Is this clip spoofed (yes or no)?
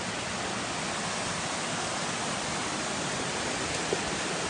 no